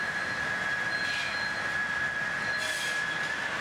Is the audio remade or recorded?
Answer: recorded